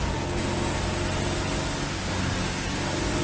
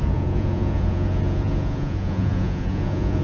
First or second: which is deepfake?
second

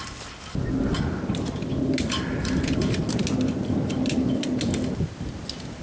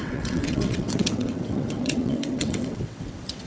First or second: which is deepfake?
second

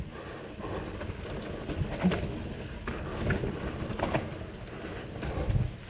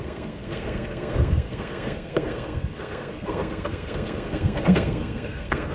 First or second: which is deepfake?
second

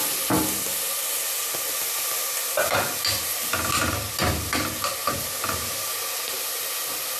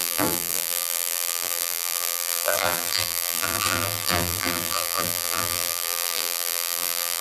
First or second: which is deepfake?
second